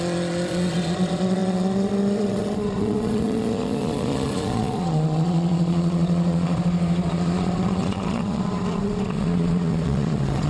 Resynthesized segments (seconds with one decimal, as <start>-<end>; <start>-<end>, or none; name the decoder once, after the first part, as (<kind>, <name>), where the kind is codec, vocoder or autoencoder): 0.0-10.5 (vocoder, Vocos)